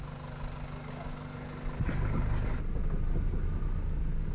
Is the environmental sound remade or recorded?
recorded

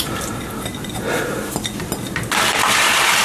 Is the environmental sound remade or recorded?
recorded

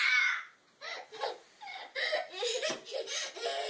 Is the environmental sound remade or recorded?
recorded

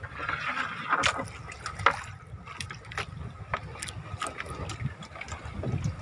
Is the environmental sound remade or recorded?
recorded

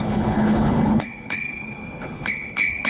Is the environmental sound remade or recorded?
remade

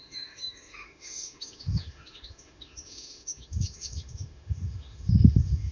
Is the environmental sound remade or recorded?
remade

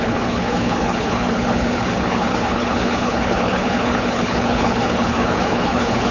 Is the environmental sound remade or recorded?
remade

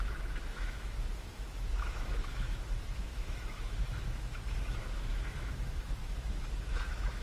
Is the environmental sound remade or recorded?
remade